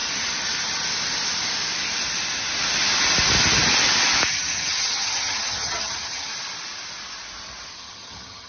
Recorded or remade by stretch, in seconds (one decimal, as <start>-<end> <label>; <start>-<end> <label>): 0.0-4.3 recorded; 4.3-6.3 remade; 6.3-7.7 recorded; 7.7-8.5 remade